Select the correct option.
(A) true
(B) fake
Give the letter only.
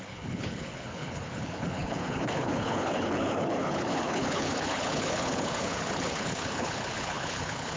B